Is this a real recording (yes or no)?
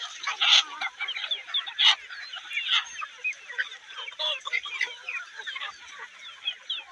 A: yes